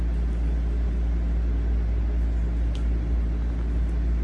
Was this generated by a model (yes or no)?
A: no